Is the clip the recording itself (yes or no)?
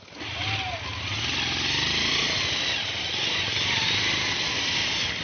yes